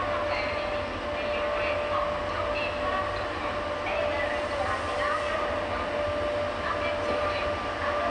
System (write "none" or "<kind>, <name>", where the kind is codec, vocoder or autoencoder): none